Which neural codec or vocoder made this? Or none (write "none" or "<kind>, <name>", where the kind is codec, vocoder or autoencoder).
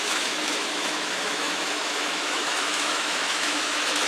autoencoder, DAC-VAE